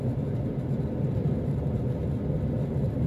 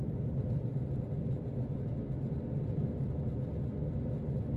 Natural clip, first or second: second